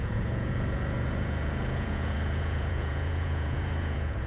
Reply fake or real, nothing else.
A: fake